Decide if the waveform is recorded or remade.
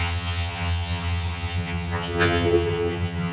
remade